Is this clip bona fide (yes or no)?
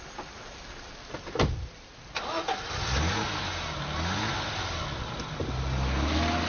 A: yes